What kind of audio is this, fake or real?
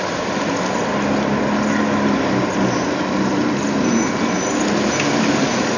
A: real